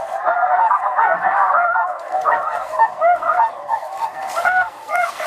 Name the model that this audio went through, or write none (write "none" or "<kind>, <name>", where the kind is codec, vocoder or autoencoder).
codec, SNAC